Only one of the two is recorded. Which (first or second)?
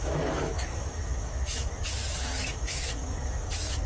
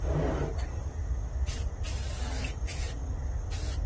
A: second